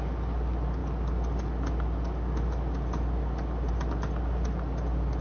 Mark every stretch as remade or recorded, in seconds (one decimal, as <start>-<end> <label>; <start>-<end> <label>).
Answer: 0.0-5.2 recorded